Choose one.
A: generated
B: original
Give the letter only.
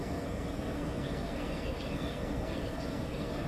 A